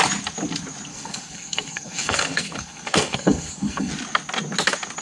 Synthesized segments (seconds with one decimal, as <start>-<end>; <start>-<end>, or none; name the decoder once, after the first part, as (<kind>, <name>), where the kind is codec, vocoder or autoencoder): 0.9-3.9 (codec, SNAC)